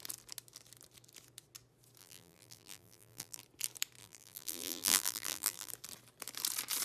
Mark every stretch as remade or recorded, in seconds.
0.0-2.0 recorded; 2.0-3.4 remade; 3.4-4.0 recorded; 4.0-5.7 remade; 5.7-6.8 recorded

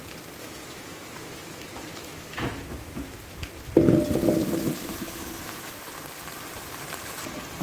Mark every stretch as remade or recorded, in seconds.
0.0-0.4 recorded; 0.4-3.6 remade; 3.6-4.4 recorded; 4.4-5.7 remade; 5.7-7.6 recorded

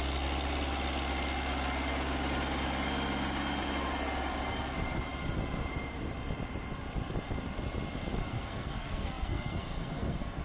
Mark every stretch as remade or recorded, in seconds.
0.0-8.2 recorded; 8.2-10.4 remade

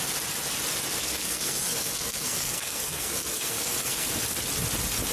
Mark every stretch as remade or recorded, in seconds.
0.0-1.0 recorded; 1.0-4.1 remade; 4.1-5.1 recorded

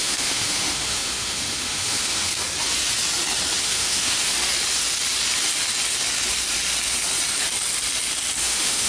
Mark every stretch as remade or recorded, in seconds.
0.0-2.3 remade; 2.3-3.6 recorded; 3.6-4.5 remade; 4.5-8.4 recorded; 8.4-8.9 remade

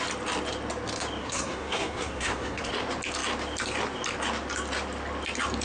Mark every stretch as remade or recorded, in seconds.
0.0-1.2 recorded; 1.2-2.7 remade; 2.7-5.6 recorded